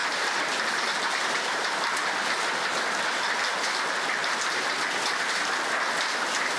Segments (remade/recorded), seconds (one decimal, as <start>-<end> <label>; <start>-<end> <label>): 0.0-3.0 remade; 3.0-4.2 recorded; 4.2-4.7 remade; 4.7-6.6 recorded